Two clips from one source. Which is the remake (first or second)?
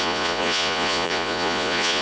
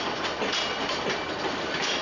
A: first